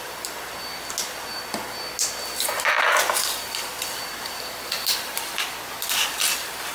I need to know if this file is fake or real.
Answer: real